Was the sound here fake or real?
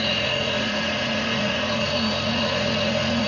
fake